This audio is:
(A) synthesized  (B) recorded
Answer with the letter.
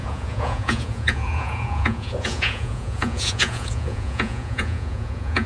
A